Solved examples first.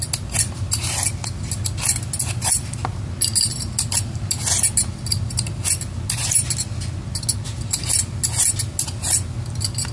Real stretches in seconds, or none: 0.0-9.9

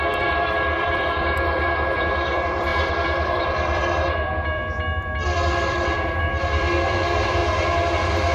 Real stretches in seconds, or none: 7.4-7.9

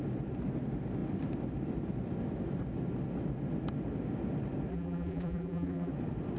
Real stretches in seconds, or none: 0.0-4.7; 5.9-6.4

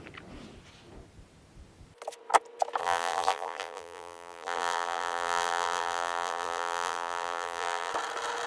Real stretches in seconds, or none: 0.0-2.8; 7.9-8.5